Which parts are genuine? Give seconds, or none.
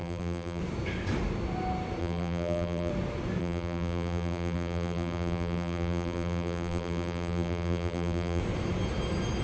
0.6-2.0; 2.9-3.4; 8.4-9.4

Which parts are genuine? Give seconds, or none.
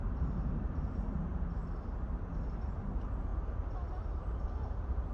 1.6-2.3; 3.3-4.1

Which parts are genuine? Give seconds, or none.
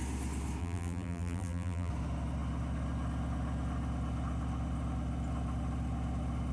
0.0-0.6; 1.9-6.5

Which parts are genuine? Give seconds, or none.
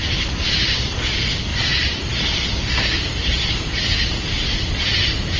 0.0-5.4